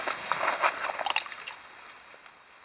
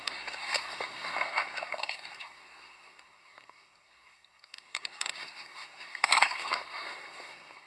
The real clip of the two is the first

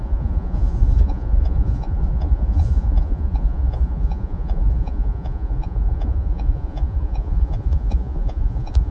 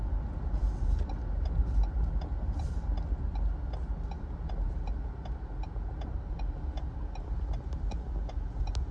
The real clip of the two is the second